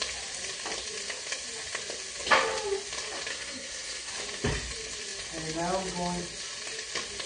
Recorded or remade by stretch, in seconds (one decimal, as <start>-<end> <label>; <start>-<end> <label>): 0.0-3.3 recorded; 3.3-4.1 remade; 4.1-7.3 recorded